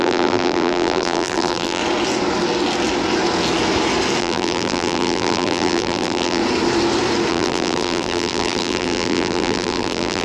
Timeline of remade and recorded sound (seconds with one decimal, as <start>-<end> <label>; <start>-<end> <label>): 0.0-1.8 remade; 1.8-4.2 recorded; 4.2-6.4 remade; 6.4-7.3 recorded; 7.3-10.2 remade